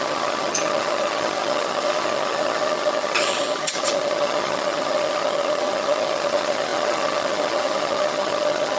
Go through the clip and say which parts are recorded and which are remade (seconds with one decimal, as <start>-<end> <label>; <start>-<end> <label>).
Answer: 0.0-8.8 remade